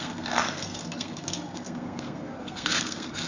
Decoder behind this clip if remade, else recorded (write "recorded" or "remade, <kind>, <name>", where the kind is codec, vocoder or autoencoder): remade, codec, SNAC